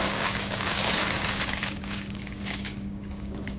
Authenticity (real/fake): fake